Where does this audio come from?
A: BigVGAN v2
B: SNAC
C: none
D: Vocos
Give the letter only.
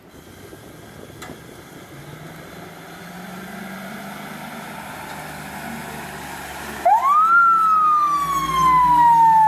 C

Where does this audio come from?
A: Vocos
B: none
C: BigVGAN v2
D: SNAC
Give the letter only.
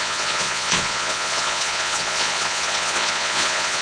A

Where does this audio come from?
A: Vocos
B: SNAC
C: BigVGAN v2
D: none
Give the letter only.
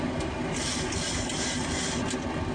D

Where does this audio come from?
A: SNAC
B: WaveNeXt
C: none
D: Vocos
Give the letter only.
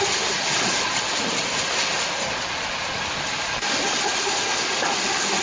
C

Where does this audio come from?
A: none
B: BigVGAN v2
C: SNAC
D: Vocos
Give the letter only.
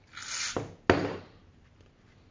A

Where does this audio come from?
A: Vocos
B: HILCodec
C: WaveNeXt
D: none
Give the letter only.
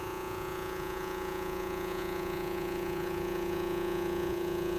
A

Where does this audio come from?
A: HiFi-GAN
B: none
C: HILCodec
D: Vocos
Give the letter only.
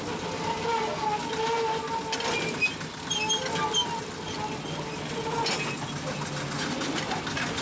B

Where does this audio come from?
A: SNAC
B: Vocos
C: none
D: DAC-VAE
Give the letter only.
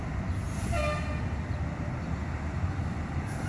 C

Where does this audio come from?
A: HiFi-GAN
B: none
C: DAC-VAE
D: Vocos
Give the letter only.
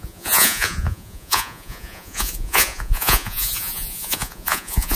D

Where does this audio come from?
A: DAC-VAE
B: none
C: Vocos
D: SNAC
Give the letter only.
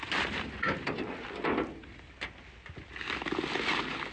B